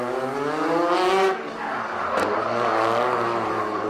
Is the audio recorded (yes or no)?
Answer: no